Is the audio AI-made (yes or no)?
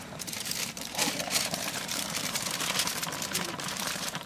yes